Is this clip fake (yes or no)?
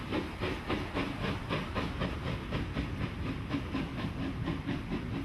no